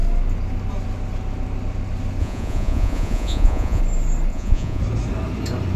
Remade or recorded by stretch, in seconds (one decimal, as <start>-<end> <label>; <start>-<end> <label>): 0.0-2.2 recorded; 2.2-3.8 remade; 3.8-4.3 recorded; 4.3-4.8 remade; 4.8-5.8 recorded